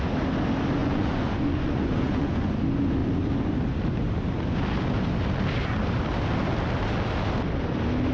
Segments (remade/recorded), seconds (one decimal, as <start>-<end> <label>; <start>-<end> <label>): 0.0-0.8 recorded; 0.8-2.6 remade; 2.6-8.1 recorded